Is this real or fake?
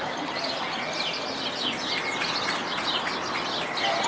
real